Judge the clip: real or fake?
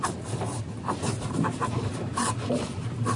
real